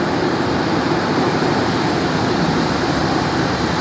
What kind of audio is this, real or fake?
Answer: fake